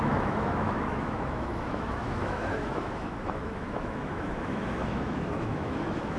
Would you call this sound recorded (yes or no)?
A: no